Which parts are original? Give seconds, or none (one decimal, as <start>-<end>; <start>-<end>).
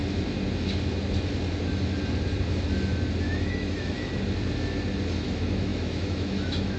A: 0.0-3.2; 4.1-5.2